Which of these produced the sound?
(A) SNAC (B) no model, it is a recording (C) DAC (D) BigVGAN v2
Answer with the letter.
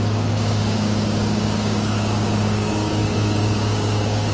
C